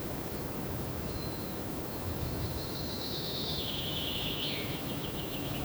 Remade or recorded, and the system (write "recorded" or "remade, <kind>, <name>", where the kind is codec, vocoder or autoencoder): remade, autoencoder, DAC-VAE